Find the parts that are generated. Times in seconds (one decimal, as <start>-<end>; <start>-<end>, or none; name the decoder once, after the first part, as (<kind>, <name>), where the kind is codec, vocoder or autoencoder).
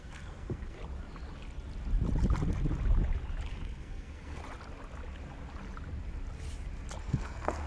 0.0-0.8 (codec, SNAC); 3.5-4.4; 7.0-7.7